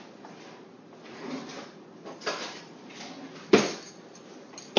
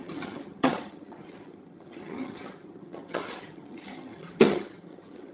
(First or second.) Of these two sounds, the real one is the first